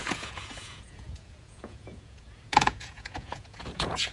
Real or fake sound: fake